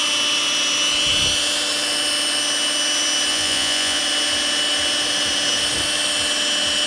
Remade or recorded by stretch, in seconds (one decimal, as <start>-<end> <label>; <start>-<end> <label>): 0.0-3.3 recorded; 3.3-4.0 remade; 4.0-6.9 recorded